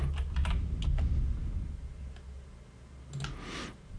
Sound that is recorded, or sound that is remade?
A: recorded